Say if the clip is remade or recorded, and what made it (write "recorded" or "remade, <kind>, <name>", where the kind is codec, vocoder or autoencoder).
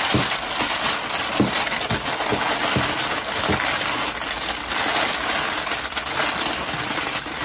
recorded